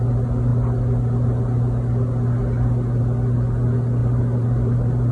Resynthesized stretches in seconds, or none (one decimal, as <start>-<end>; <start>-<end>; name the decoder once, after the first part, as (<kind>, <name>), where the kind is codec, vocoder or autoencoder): 4.0-5.1 (vocoder, BigVGAN v2)